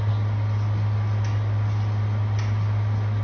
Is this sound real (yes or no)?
yes